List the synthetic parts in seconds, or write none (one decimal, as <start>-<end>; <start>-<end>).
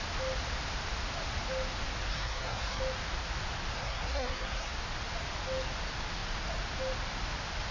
2.1-2.8; 3.7-4.7